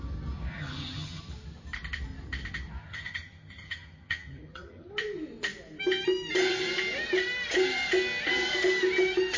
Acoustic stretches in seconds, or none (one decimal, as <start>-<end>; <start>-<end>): 0.0-0.5; 1.2-2.8; 4.9-9.4